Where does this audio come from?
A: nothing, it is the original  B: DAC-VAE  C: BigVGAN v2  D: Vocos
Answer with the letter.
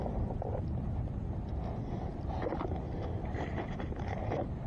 C